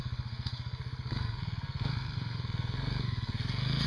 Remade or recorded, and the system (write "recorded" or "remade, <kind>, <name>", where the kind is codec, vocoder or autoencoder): remade, codec, SNAC